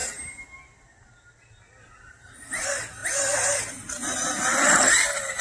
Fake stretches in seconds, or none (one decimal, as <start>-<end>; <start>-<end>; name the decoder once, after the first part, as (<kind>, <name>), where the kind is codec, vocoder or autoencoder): none